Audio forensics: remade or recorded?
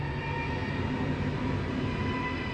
recorded